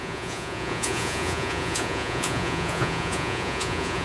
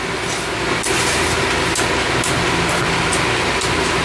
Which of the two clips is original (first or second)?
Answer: second